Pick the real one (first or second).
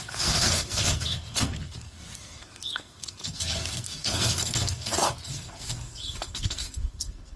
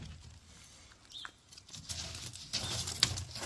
second